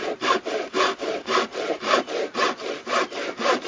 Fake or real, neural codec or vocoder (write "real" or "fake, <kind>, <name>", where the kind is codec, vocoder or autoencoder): fake, vocoder, BigVGAN v2